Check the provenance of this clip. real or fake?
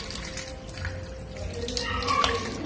real